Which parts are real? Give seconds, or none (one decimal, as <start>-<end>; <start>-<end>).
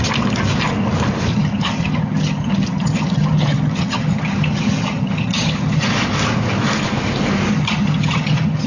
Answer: 0.0-1.3; 5.9-7.5